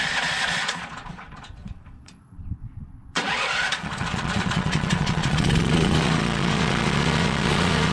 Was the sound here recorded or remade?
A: remade